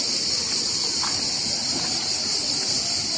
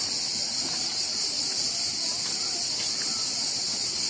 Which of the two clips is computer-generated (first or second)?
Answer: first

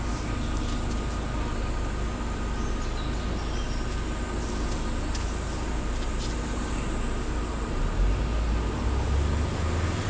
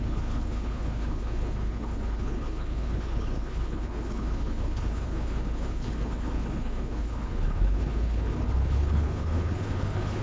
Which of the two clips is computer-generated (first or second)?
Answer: second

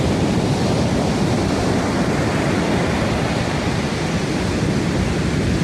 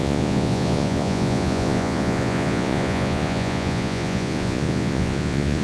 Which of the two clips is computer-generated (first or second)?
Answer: second